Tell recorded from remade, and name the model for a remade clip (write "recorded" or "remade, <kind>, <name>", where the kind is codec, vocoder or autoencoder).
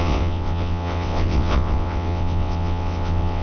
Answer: remade, vocoder, WaveNeXt